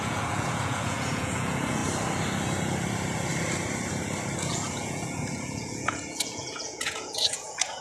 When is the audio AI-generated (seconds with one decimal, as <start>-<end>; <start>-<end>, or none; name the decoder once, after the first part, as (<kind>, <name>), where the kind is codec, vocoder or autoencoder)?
0.0-1.8 (vocoder, Vocos); 4.4-7.8